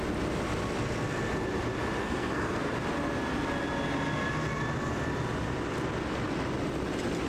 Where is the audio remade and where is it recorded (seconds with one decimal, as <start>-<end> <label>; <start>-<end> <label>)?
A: 0.0-2.0 recorded; 2.0-2.7 remade; 2.7-7.3 recorded